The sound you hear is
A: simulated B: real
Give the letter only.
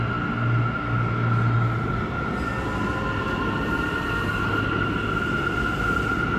B